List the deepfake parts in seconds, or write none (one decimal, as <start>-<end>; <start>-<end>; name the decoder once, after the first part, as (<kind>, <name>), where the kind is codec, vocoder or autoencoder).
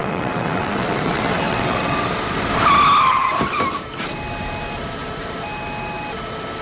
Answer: 0.0-2.1 (vocoder, WaveNeXt)